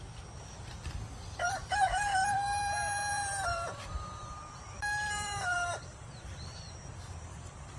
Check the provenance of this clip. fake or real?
fake